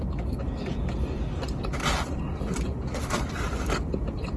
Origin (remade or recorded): recorded